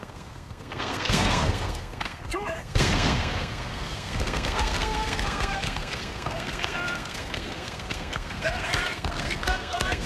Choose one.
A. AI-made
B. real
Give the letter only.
A